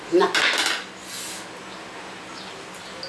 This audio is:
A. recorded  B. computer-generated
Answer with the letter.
A